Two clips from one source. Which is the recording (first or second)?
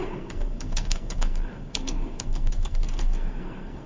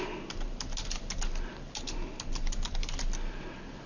second